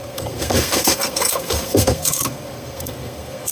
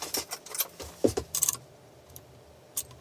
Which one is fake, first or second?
first